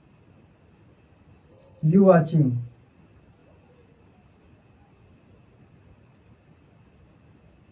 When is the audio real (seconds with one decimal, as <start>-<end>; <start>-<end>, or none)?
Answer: 0.0-1.5; 2.0-7.7